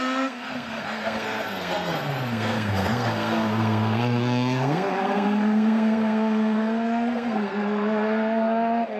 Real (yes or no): no